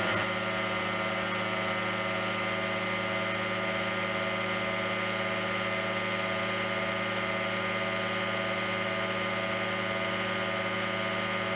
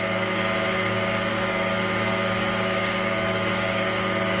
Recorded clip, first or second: first